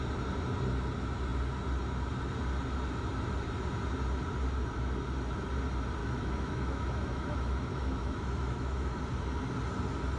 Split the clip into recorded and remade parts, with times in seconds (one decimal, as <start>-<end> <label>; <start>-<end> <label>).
0.0-6.0 recorded; 6.0-9.0 remade; 9.0-10.2 recorded